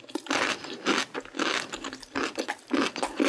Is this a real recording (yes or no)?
yes